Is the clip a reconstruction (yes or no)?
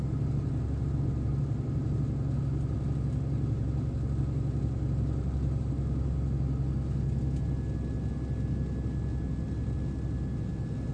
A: no